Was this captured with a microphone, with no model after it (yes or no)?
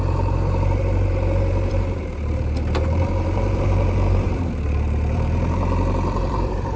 no